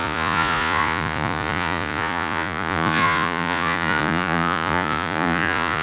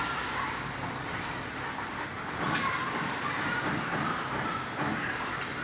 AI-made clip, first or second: first